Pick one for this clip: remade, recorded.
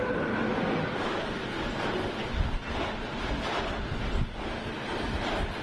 recorded